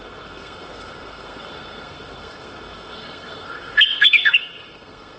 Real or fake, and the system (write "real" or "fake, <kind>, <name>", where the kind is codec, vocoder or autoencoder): fake, codec, SNAC